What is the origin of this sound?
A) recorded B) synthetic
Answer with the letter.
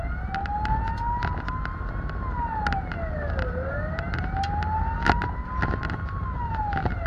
A